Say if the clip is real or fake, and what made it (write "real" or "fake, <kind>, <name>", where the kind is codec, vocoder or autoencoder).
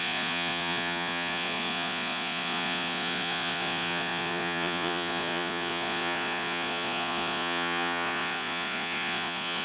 fake, vocoder, Vocos